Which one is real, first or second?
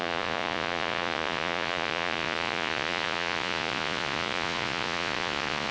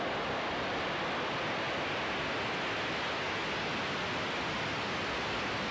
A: second